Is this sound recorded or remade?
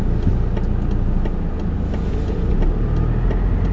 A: recorded